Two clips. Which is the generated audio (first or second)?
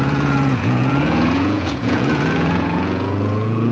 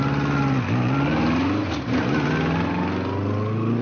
first